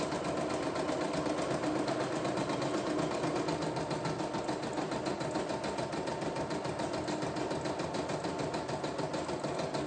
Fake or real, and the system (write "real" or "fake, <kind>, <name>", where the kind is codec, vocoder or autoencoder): real